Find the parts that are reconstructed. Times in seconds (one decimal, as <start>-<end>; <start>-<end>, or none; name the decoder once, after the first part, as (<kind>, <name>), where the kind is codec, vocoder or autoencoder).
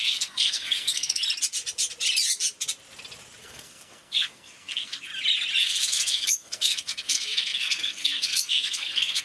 0.0-1.2 (codec, SNAC); 3.4-5.1; 5.6-9.2